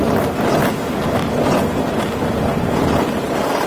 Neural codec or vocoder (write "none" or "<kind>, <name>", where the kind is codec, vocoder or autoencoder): none